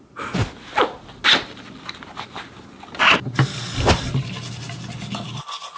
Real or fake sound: real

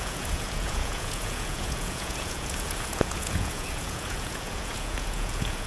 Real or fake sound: fake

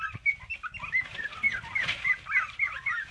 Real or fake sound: real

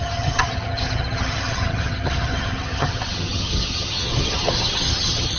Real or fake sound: fake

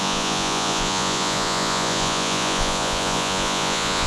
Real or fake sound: fake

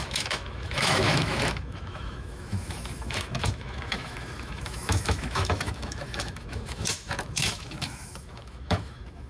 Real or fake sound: fake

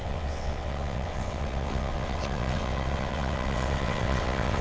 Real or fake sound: fake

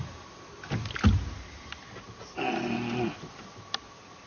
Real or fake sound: real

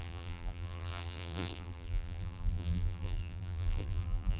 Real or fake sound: fake